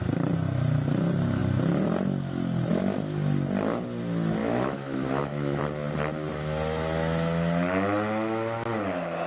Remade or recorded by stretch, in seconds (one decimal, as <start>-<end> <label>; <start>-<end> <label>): 0.0-4.4 recorded; 4.4-5.6 remade; 5.6-9.3 recorded